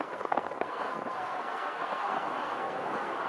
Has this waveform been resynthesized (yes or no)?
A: yes